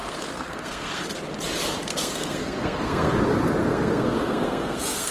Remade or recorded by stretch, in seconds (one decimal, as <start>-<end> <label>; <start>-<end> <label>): 0.0-1.0 remade; 1.0-1.8 recorded; 1.8-3.1 remade; 3.1-3.6 recorded; 3.6-5.1 remade